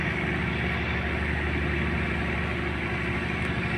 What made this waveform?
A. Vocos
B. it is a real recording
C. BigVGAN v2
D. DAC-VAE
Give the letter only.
B